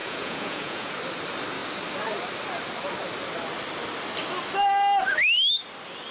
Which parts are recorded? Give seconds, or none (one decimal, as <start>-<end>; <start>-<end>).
0.9-6.1

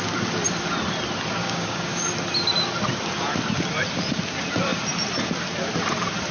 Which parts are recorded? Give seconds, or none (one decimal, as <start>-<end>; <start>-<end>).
0.0-1.4; 2.0-6.3

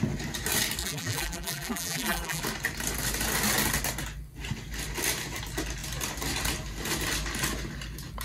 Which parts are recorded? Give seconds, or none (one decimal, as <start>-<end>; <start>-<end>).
0.0-0.8; 2.4-8.2

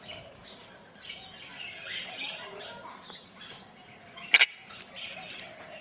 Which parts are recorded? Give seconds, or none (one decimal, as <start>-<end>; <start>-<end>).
1.5-4.9

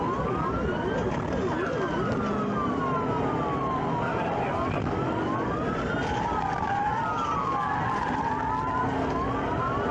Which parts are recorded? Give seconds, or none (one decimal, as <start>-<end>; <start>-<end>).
0.0-9.9